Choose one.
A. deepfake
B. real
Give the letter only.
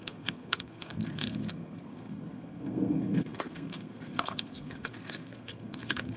A